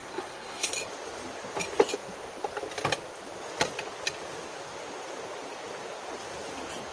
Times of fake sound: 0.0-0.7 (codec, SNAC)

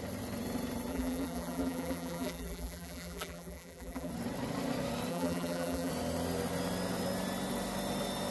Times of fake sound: 0.9-4.1 (vocoder, BigVGAN v2); 5.1-5.9